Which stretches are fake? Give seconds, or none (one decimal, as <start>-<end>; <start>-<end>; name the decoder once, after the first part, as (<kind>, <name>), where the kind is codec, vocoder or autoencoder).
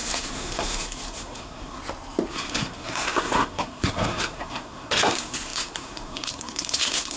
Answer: 0.0-1.8 (codec, SNAC); 2.3-7.2